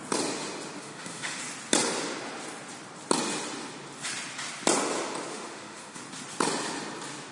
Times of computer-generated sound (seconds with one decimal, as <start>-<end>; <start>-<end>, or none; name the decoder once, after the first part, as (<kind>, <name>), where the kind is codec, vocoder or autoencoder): 0.8-1.4 (autoencoder, DAC-VAE); 5.3-6.0